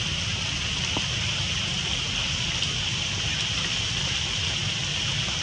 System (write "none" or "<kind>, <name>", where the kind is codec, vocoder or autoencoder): none